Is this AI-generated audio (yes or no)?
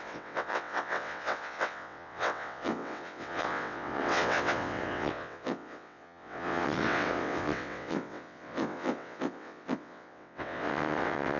yes